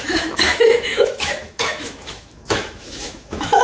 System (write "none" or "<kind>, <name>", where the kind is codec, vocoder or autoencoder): autoencoder, DAC-VAE